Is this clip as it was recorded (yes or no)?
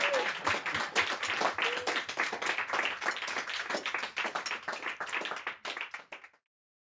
yes